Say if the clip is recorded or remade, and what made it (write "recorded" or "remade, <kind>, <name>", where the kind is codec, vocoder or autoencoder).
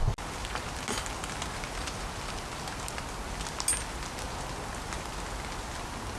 recorded